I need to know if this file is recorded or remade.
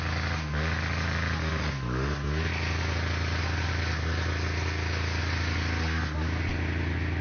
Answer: recorded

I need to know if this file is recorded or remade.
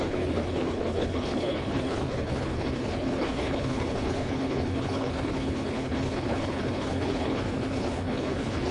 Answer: remade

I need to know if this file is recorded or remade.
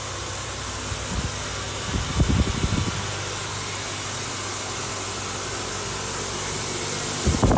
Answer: recorded